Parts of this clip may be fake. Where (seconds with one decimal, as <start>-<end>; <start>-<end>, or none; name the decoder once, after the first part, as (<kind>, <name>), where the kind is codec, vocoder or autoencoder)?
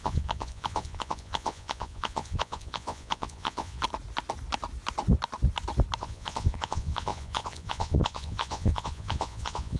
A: 0.0-3.8 (vocoder, Vocos); 6.0-9.8